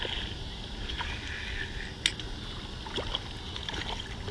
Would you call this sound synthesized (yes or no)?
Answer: no